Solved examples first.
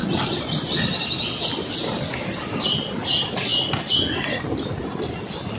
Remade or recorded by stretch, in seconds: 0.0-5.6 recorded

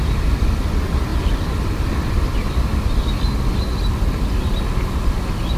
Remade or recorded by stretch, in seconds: 0.0-5.6 recorded

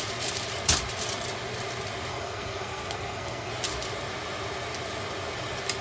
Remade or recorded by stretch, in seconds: 0.0-2.1 recorded; 2.1-3.5 remade; 3.5-5.8 recorded

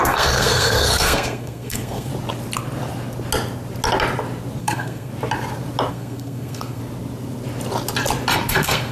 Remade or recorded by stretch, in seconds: 0.0-2.1 remade; 2.1-4.6 recorded; 4.6-5.1 remade; 5.1-5.9 recorded; 5.9-6.8 remade; 6.8-8.5 recorded; 8.5-8.9 remade

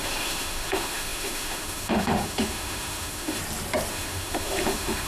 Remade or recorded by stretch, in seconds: 0.0-3.4 remade; 3.4-3.9 recorded; 3.9-5.1 remade